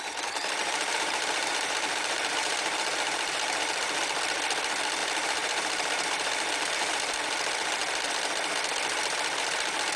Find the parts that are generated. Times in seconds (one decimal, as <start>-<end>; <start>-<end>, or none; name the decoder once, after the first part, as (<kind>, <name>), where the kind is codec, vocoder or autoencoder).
0.6-4.0 (vocoder, BigVGAN v2); 5.0-7.2